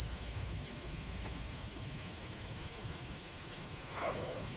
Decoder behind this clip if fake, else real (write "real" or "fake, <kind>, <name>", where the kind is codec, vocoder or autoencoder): fake, autoencoder, DAC-VAE